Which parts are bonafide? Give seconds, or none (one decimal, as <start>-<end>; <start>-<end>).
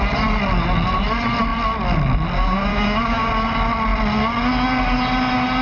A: 0.0-2.7; 3.3-5.6